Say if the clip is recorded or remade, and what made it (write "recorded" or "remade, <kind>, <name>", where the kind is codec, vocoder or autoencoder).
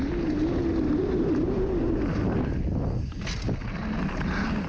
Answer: recorded